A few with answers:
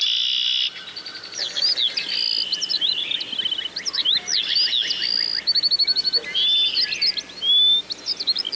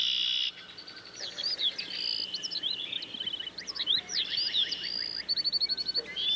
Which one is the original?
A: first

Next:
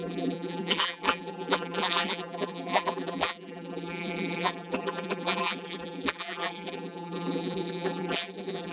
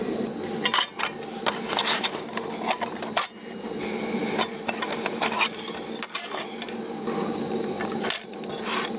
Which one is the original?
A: second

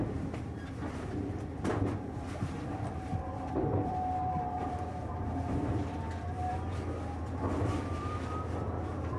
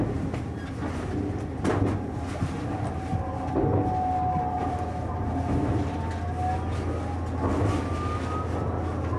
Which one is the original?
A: second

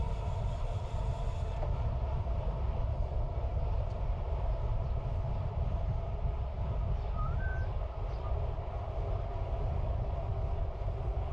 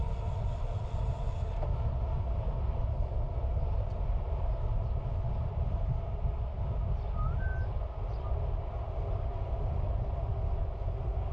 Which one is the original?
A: second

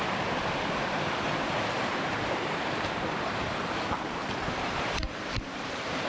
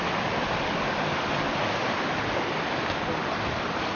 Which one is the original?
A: second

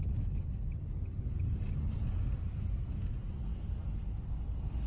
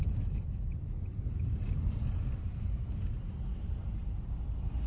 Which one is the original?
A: first